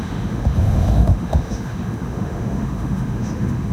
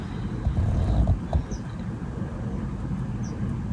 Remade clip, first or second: first